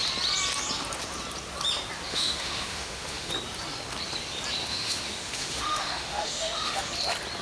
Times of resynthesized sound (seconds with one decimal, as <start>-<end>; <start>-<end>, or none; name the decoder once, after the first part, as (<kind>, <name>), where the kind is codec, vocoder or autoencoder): 2.1-3.3 (autoencoder, DAC-VAE); 4.6-6.9